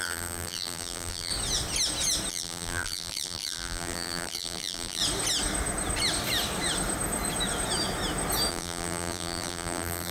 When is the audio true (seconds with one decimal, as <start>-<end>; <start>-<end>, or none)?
1.3-2.3; 5.0-8.5